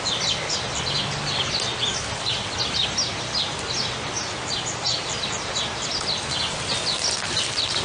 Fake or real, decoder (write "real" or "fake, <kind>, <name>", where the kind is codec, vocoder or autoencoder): real